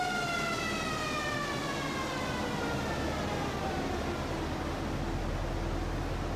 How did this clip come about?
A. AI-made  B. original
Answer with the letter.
B